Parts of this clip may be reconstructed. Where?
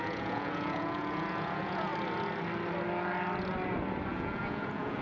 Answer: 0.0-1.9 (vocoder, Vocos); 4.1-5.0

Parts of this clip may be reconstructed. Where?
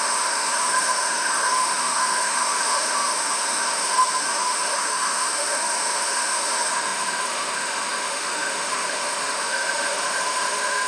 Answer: 0.0-10.9 (autoencoder, DAC-VAE)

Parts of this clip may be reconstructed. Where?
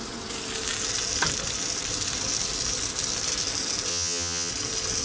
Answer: 3.9-4.5 (vocoder, HiFi-GAN)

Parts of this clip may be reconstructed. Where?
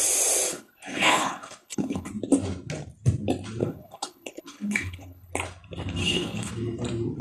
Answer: 0.5-2.1 (codec, HILCodec); 3.6-5.3; 6.0-6.5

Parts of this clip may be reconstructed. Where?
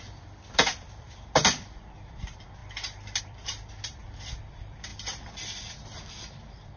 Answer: 0.0-4.0 (vocoder, BigVGAN v2); 4.5-6.8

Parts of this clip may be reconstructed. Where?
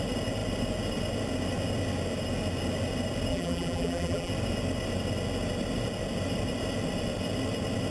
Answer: 3.3-4.3 (vocoder, BigVGAN v2)